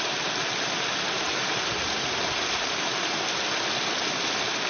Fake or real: real